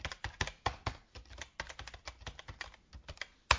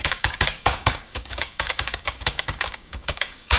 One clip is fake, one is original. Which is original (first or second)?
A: first